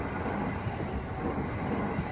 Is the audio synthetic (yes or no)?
no